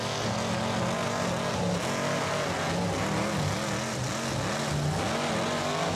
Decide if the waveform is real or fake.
real